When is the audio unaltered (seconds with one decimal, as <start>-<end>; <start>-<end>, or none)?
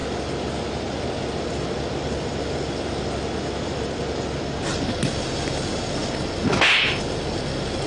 0.0-7.9